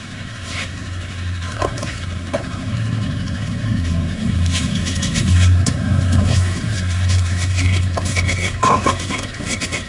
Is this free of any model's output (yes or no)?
no